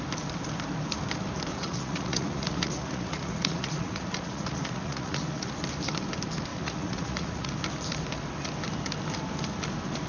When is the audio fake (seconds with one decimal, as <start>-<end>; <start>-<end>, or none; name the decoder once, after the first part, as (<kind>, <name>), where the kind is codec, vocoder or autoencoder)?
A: 1.5-5.5 (vocoder, Vocos); 6.5-7.5